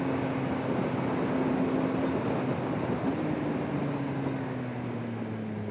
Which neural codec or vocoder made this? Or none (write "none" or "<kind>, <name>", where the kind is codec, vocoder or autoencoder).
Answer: none